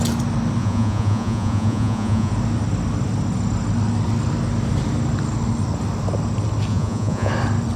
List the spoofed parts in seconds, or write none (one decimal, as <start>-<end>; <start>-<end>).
0.6-2.3; 6.7-7.3